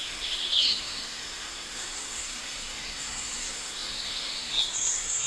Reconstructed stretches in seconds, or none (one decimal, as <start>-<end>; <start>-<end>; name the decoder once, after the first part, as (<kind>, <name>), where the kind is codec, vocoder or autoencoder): 0.0-5.3 (codec, SNAC)